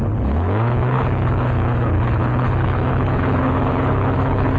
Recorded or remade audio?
remade